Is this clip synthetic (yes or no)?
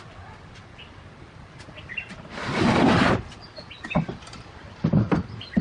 no